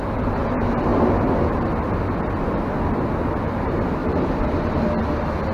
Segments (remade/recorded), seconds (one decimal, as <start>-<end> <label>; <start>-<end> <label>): 0.0-0.9 recorded; 0.9-1.9 remade; 1.9-4.0 recorded; 4.0-4.6 remade; 4.6-5.5 recorded